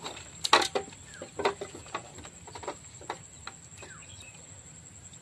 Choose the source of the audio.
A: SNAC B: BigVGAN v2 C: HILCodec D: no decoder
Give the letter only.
D